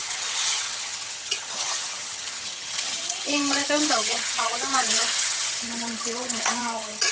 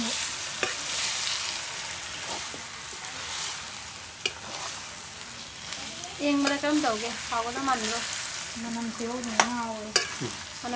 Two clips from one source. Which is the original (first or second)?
second